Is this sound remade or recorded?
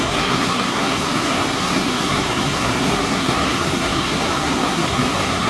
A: remade